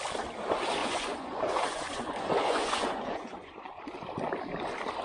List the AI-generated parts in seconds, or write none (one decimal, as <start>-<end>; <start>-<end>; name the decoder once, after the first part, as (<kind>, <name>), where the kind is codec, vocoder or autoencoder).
0.8-3.8 (vocoder, Vocos)